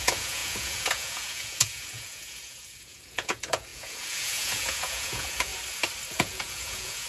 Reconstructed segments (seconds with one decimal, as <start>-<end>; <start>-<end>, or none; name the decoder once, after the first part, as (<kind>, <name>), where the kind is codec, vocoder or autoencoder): 0.0-5.5 (vocoder, Vocos); 6.1-7.1